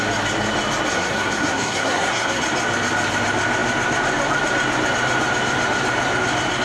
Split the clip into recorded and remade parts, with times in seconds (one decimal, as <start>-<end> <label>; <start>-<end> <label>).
0.0-0.9 recorded; 0.9-2.4 remade; 2.4-6.6 recorded